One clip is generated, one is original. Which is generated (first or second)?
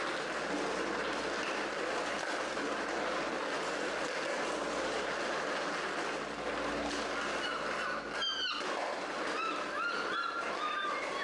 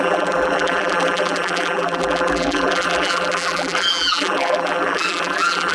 second